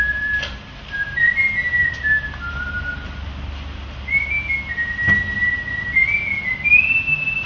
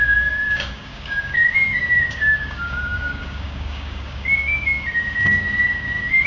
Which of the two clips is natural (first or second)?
first